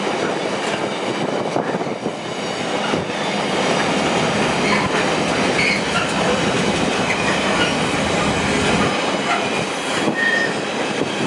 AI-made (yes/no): no